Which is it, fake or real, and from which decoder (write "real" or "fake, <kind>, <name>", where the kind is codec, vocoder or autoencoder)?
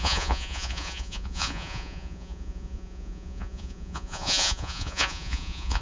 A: fake, vocoder, Vocos